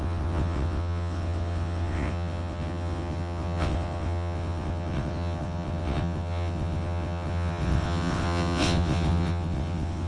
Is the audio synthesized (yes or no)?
yes